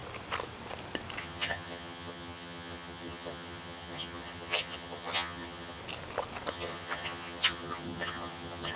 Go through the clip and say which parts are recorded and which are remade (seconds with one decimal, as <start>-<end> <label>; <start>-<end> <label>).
0.0-1.2 recorded; 1.2-5.8 remade; 5.8-6.5 recorded; 6.5-8.8 remade